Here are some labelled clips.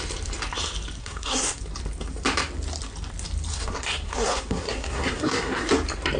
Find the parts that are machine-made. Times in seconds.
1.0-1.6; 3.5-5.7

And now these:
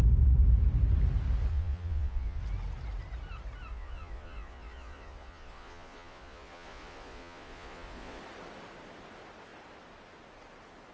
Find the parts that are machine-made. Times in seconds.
1.5-2.4; 3.7-8.2

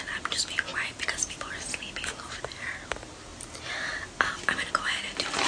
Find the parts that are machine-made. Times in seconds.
3.3-4.4

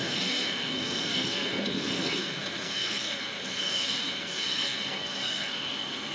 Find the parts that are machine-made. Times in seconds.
0.0-6.1

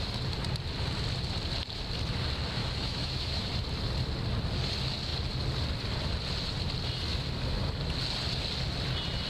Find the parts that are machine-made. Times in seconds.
2.6-3.5